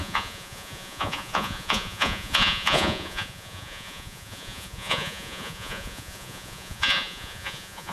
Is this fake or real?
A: fake